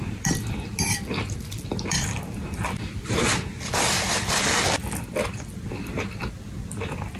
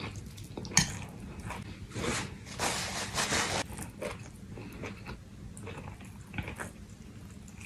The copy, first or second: first